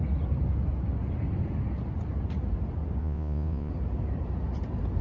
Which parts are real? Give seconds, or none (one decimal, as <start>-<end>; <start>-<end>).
0.0-3.0; 3.7-5.0